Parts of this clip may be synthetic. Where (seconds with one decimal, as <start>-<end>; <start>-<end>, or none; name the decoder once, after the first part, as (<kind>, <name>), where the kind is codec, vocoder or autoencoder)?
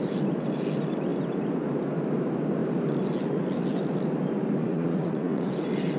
4.6-5.5 (vocoder, Vocos)